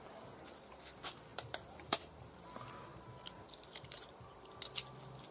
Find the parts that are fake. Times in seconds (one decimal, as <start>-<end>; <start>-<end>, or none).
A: 1.3-2.4; 2.9-4.4